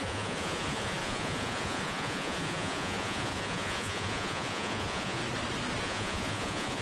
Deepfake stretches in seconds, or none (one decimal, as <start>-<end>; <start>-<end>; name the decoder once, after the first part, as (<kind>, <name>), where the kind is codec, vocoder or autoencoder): 0.0-5.2 (vocoder, Vocos); 5.8-6.8